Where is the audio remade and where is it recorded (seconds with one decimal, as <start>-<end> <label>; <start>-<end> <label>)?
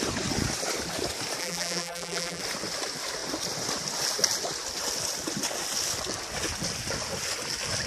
0.0-1.4 recorded; 1.4-2.4 remade; 2.4-7.9 recorded